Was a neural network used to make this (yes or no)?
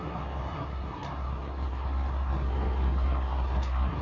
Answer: yes